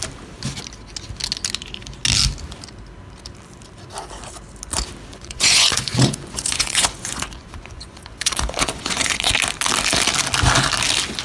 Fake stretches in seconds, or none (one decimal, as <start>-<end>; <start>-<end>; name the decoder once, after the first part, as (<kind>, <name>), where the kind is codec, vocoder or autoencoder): 5.1-9.3 (vocoder, Vocos)